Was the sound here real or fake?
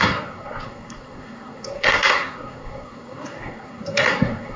fake